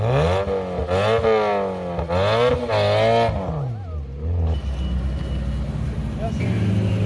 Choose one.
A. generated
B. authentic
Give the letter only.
B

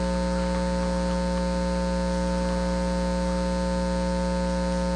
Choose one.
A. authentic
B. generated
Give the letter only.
A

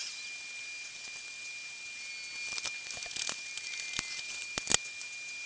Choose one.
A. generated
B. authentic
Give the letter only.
B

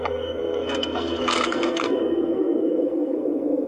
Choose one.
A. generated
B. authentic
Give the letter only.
A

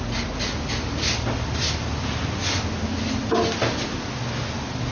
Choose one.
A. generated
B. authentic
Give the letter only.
B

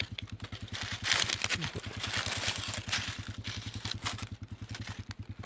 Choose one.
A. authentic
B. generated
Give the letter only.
A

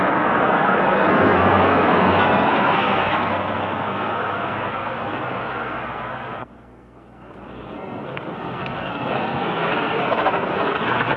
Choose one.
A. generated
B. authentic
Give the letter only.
A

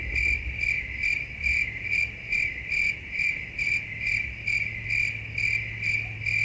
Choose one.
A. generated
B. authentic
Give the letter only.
B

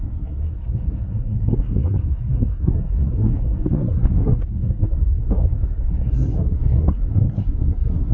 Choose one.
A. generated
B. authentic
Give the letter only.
A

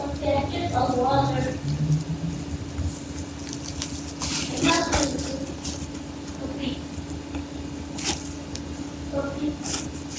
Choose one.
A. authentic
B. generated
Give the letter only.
A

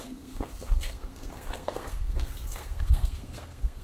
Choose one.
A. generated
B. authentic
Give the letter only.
A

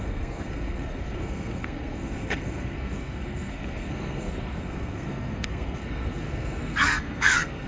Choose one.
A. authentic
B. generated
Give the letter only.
B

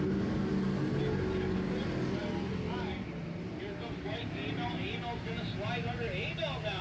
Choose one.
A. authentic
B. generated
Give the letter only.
A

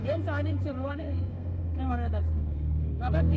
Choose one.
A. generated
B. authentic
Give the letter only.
A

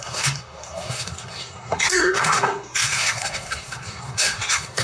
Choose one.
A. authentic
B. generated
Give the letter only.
B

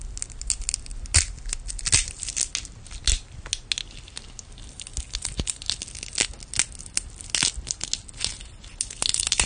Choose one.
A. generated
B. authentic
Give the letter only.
B